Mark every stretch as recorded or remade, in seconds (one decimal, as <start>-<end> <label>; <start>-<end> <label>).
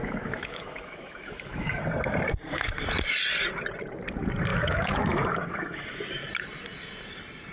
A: 0.0-1.8 remade; 1.8-4.5 recorded; 4.5-6.0 remade; 6.0-7.5 recorded